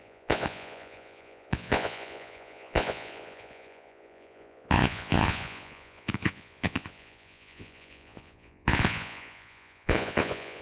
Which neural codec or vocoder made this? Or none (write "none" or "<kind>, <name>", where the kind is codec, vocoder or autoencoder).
vocoder, Vocos